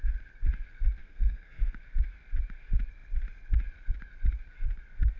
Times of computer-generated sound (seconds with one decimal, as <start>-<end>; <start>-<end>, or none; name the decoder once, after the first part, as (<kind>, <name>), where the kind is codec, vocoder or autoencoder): 1.0-1.6 (codec, SNAC)